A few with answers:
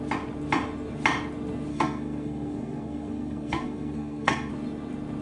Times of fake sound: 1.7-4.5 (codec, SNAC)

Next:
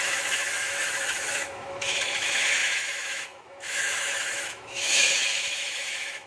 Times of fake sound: 0.0-6.3 (autoencoder, DAC-VAE)